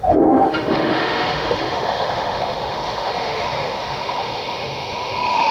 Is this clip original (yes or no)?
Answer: no